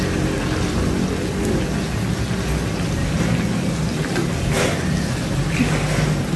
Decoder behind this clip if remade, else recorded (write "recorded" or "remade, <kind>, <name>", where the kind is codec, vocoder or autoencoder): recorded